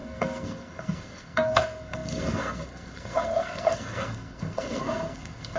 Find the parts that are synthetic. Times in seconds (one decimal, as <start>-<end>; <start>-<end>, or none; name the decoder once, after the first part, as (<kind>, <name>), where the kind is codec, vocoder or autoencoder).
0.0-5.6 (codec, SNAC)